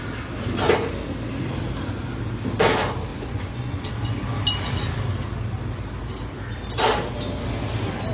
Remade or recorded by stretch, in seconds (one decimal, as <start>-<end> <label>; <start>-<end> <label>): 0.0-3.1 recorded; 3.1-3.9 remade; 3.9-8.1 recorded